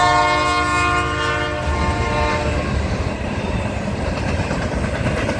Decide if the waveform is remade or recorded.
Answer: recorded